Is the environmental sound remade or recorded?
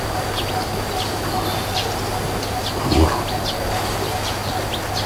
recorded